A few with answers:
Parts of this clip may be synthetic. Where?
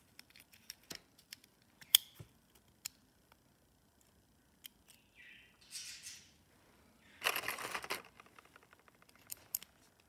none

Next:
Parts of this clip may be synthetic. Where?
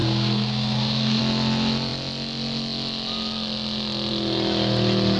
0.0-1.2 (codec, SNAC)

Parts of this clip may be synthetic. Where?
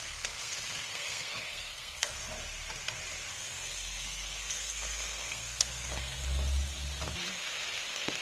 0.0-2.2 (codec, SNAC); 3.3-6.2; 7.3-8.2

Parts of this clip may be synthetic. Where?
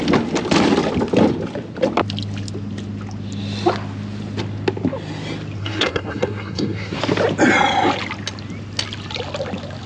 5.6-7.0 (codec, SNAC)